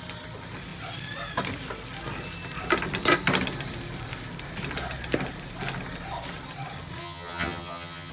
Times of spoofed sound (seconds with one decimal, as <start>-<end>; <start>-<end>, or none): 7.0-8.1